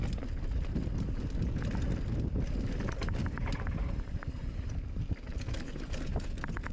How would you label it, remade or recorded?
recorded